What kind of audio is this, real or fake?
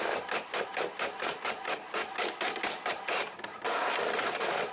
real